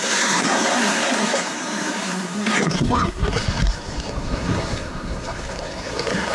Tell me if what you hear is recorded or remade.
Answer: remade